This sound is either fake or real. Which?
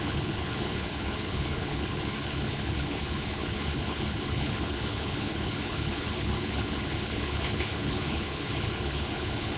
fake